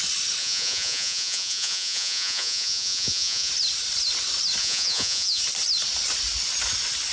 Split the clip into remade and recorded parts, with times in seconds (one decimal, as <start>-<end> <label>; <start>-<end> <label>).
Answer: 0.0-0.4 recorded; 0.4-3.5 remade; 3.5-4.6 recorded; 4.6-5.4 remade; 5.4-7.1 recorded